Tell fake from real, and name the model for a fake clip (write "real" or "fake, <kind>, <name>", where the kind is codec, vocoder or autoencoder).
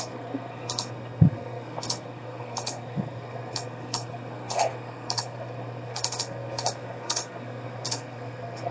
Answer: fake, codec, SNAC